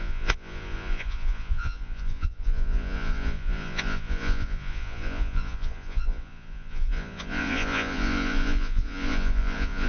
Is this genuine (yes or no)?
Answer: no